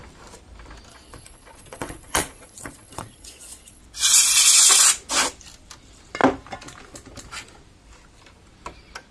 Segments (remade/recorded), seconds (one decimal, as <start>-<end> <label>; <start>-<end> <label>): 0.0-0.9 recorded; 0.9-3.8 remade; 3.8-9.1 recorded